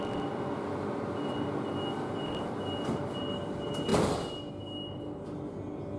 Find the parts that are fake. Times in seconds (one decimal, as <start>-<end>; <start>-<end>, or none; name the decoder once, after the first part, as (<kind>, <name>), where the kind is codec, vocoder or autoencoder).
none